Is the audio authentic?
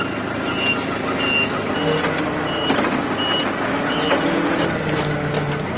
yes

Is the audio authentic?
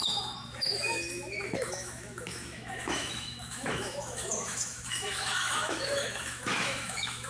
no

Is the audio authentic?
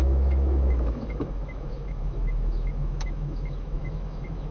no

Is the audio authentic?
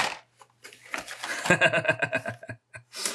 yes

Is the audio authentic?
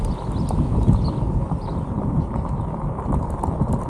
yes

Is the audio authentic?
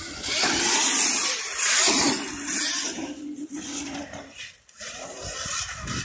yes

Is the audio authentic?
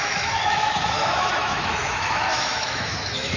no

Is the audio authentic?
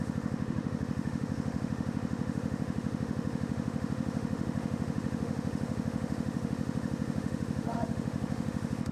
no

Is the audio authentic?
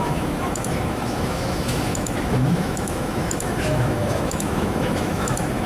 no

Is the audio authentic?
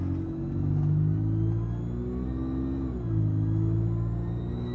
yes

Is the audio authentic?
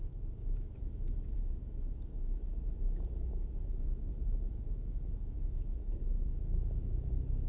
no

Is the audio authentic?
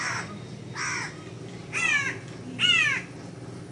yes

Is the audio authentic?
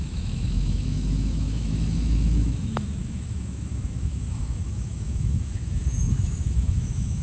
no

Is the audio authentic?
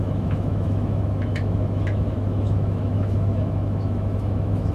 no